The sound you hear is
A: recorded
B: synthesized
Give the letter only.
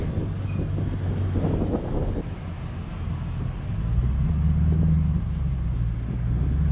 A